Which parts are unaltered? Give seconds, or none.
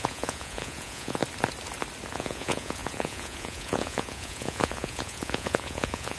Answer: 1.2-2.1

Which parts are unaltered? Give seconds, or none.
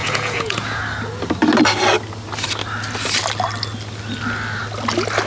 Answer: 0.8-5.3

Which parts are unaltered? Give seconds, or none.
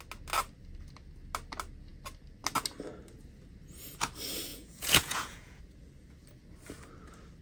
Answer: 0.0-4.5; 5.6-7.4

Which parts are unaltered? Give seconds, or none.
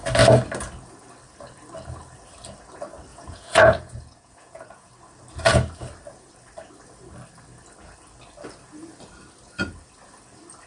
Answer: 0.0-3.1; 4.9-10.7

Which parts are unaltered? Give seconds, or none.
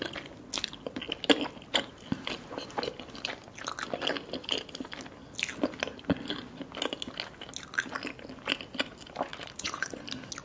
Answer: 0.0-9.3; 10.0-10.4